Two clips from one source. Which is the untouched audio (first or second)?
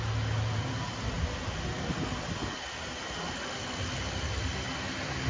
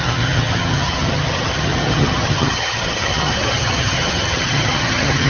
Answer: first